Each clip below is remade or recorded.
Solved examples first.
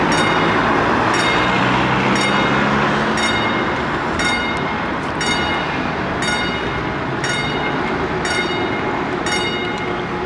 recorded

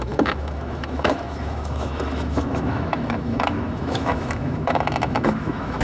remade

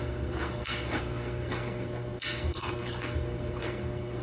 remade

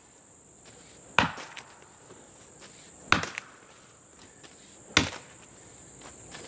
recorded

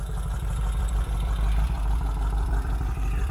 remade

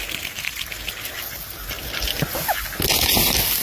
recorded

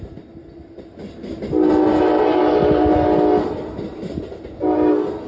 recorded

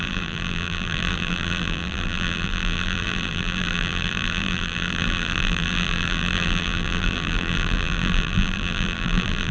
remade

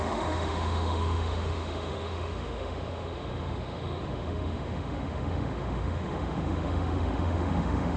remade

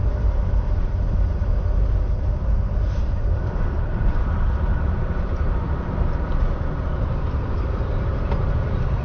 remade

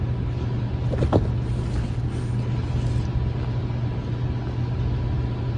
recorded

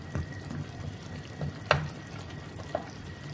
recorded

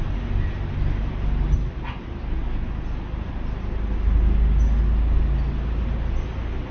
recorded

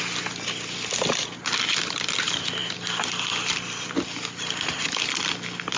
recorded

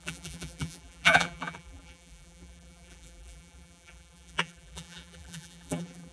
remade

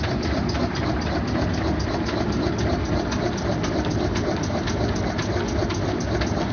recorded